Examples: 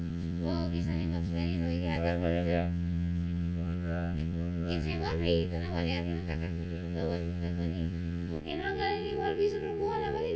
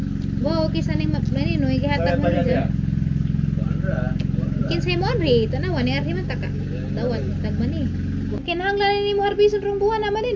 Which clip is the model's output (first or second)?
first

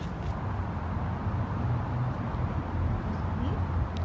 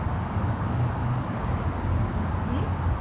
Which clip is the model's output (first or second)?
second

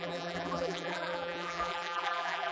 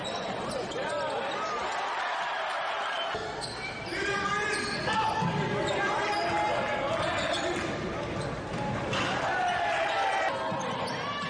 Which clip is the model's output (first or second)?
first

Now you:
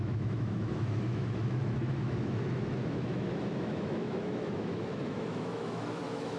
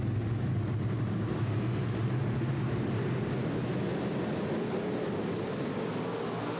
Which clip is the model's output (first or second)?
first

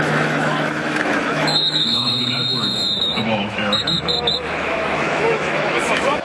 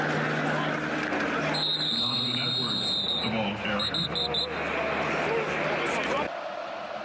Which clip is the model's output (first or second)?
first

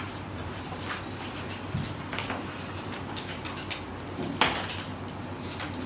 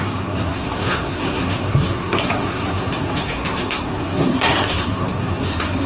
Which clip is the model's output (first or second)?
second